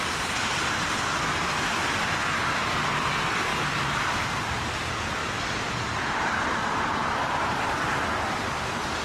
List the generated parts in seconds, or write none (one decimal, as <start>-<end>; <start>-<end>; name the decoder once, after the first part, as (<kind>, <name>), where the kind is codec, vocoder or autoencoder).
3.5-4.2 (vocoder, BigVGAN v2); 5.2-7.7